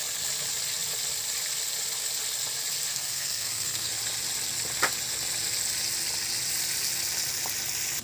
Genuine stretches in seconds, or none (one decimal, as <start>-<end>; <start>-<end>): 0.0-2.9; 3.9-8.0